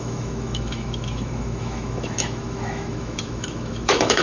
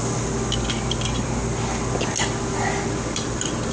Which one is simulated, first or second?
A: first